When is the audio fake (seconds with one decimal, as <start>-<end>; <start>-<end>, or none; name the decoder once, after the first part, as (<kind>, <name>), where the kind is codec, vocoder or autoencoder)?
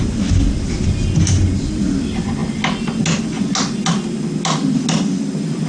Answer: none